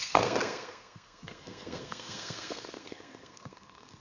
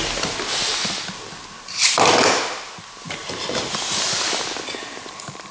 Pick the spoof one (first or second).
first